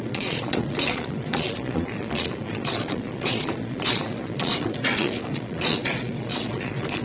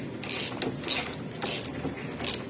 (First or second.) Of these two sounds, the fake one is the first